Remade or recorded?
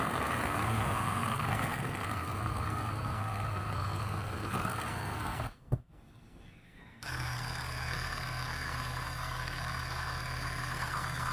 remade